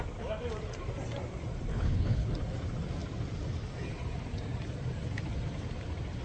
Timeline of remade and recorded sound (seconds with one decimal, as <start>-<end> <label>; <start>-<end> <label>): 0.0-1.7 recorded; 1.7-2.3 remade; 2.3-6.2 recorded